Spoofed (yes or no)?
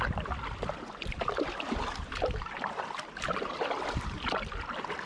yes